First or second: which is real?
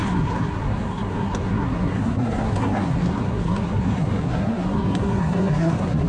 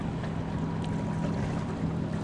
second